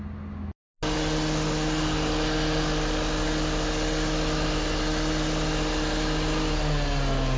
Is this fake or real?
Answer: real